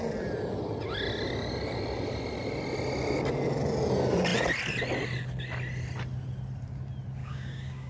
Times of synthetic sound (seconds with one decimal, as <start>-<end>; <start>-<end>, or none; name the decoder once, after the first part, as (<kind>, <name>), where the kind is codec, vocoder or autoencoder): 7.2-7.9 (codec, DAC)